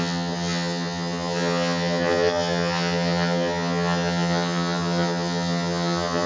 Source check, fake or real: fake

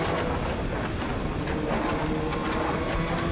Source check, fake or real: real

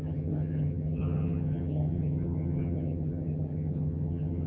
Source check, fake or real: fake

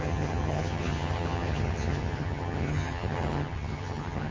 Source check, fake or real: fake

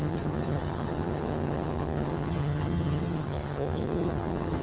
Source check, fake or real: fake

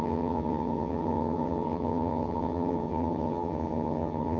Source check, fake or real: fake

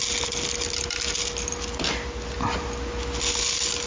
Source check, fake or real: real